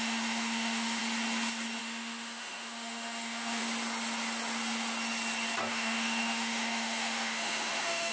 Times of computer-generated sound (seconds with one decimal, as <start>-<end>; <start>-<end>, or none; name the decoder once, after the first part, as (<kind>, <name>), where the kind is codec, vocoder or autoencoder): 0.0-1.0 (autoencoder, DAC-VAE); 1.8-3.6; 5.7-8.1